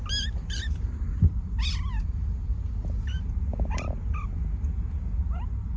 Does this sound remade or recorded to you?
recorded